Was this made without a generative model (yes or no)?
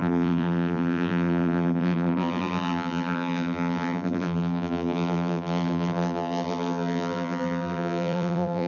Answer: no